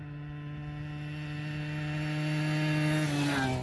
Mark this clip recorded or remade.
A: recorded